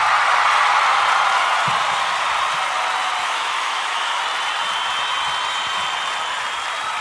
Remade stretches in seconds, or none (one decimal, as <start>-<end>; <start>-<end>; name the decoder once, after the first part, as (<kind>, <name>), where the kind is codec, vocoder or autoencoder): 3.2-4.2 (autoencoder, DAC-VAE)